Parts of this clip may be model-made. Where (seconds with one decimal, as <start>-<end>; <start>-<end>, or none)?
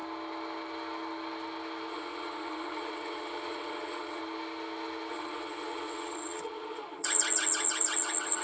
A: 1.9-4.2; 5.1-8.4